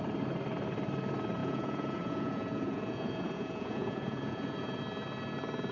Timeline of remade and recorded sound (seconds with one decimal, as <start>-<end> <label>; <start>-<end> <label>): 0.0-1.4 recorded; 1.4-4.8 remade; 4.8-5.7 recorded